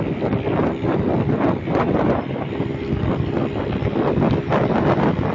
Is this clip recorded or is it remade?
recorded